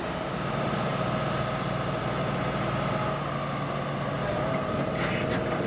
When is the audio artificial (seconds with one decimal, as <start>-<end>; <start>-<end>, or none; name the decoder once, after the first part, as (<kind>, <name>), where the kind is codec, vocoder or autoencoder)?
0.0-0.9 (vocoder, BigVGAN v2); 4.3-5.7